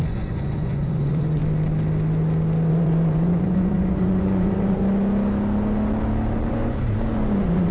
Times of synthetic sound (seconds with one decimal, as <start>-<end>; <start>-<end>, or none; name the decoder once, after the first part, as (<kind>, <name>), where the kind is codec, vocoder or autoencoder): 0.0-1.4 (vocoder, Vocos); 2.7-4.8; 6.5-7.7